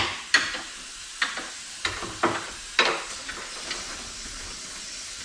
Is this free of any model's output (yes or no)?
yes